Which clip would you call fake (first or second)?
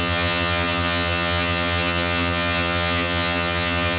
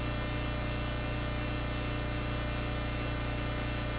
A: first